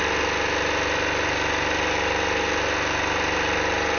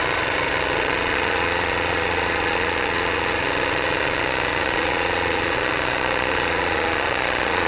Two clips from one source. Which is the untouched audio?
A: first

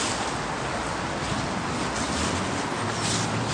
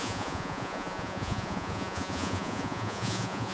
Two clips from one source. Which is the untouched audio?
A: first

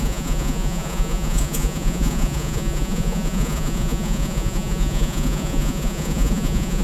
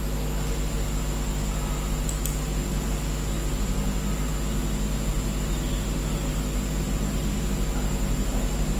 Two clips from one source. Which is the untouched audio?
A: second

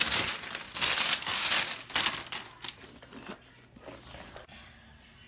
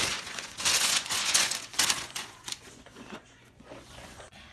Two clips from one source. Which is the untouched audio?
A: first